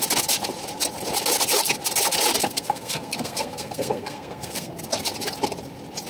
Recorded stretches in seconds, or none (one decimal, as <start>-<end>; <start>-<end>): 0.0-2.4; 4.7-6.1